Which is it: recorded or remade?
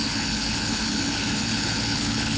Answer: remade